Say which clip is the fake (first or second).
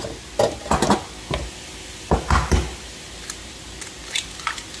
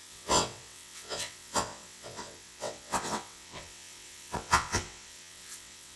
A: second